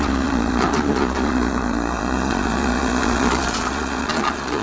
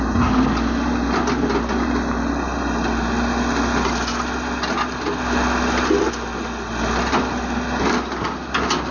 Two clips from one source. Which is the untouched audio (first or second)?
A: second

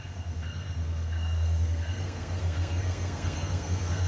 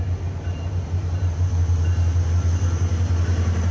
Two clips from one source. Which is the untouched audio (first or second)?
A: second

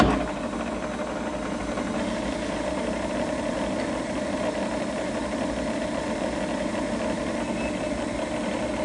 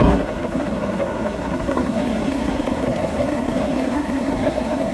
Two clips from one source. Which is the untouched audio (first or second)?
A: first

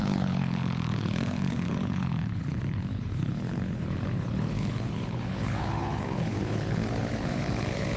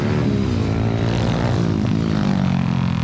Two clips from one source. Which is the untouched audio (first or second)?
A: second